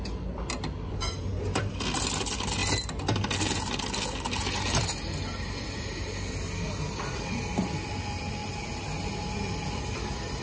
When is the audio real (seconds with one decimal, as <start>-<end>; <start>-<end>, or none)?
0.0-10.4